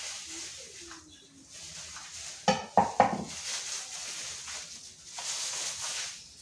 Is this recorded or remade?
recorded